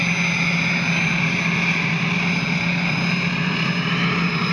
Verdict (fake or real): real